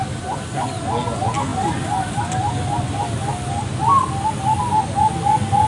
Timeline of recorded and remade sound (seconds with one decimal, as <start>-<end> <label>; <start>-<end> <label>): 0.0-5.7 recorded